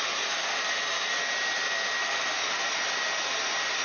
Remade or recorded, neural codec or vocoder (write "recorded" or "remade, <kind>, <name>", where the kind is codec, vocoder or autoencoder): recorded